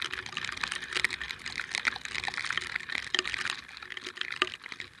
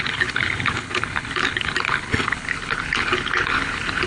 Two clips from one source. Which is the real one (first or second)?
first